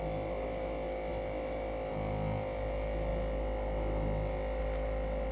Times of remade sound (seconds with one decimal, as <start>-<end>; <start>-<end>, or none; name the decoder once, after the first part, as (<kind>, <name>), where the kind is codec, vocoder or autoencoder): none